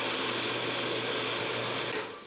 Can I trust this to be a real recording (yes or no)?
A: yes